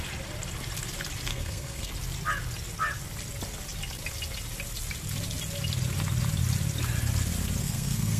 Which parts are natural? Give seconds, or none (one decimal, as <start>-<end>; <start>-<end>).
0.0-1.3; 1.9-7.6